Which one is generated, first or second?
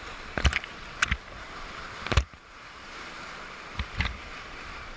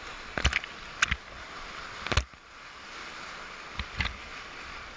first